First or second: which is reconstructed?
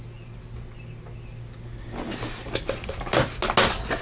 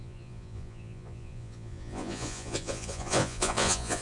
second